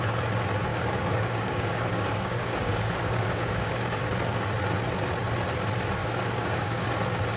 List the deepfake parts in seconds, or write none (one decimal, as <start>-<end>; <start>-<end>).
0.7-4.0; 6.0-6.8